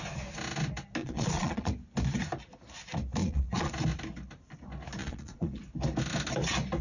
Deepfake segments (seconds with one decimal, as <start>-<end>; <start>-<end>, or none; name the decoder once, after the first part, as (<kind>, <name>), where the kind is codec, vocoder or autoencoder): 1.0-1.7 (vocoder, Vocos); 3.2-3.7; 5.0-5.7